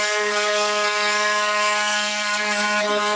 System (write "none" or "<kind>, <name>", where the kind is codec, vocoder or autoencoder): codec, SNAC